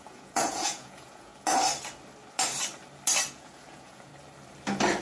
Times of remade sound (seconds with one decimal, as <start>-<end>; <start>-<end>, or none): 0.0-1.3; 3.3-4.1